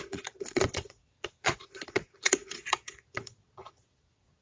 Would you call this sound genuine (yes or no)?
no